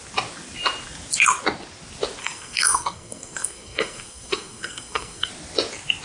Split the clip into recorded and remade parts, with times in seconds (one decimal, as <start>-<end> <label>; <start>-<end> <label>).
0.0-2.2 recorded; 2.2-5.3 remade; 5.3-6.0 recorded